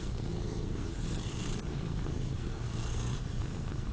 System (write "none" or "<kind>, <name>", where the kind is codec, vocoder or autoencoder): codec, SNAC